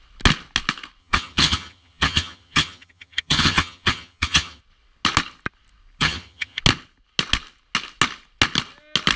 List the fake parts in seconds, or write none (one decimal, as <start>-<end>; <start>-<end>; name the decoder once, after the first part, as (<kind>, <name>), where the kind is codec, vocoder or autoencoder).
1.0-4.6 (vocoder, HiFi-GAN); 6.0-6.6